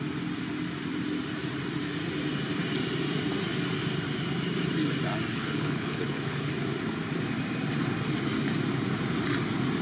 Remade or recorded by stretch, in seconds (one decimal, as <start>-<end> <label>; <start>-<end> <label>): 0.0-5.3 recorded; 5.3-6.5 remade; 6.5-9.8 recorded